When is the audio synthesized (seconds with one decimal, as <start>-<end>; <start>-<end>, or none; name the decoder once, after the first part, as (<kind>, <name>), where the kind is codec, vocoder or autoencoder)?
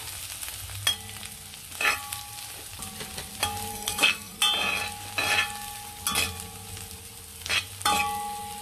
3.7-4.4 (codec, SNAC)